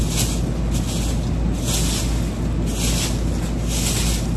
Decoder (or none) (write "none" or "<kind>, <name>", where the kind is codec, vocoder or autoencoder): none